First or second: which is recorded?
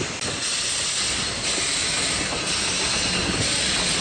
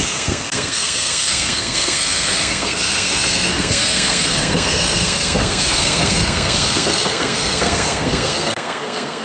first